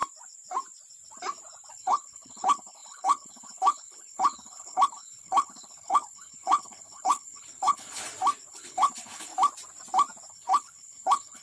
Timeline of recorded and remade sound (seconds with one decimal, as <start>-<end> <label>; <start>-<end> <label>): 0.0-1.7 recorded; 1.7-8.0 remade; 8.0-8.5 recorded; 8.5-9.3 remade; 9.3-10.3 recorded; 10.3-11.4 remade